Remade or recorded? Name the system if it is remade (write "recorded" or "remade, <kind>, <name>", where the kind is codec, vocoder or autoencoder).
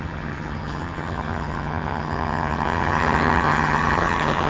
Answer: remade, vocoder, HiFi-GAN